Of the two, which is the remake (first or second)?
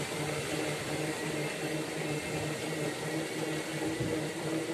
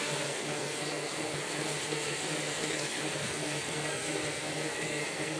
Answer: second